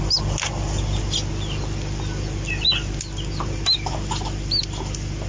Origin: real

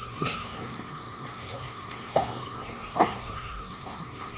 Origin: fake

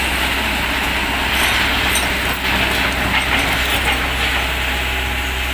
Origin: real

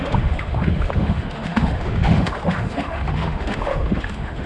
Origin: fake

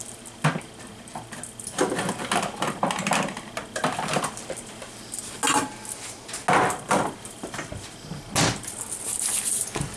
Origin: real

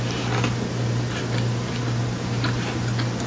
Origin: fake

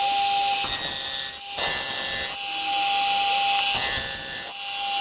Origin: real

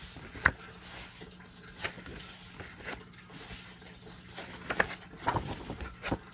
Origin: real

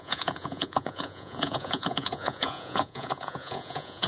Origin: fake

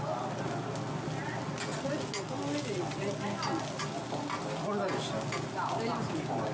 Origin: real